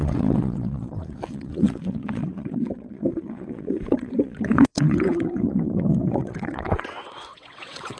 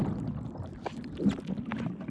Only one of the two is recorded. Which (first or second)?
second